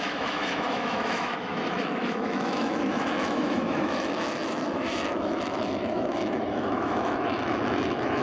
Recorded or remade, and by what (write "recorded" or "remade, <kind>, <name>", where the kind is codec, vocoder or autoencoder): remade, autoencoder, DAC-VAE